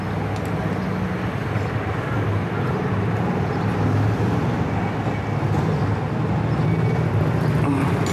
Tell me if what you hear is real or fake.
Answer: real